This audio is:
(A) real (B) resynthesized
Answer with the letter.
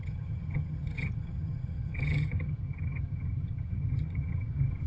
B